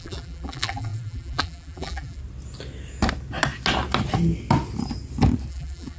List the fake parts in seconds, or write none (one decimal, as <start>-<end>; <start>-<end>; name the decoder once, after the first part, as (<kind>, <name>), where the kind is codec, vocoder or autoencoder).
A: 0.0-2.2 (vocoder, BigVGAN v2); 5.5-6.0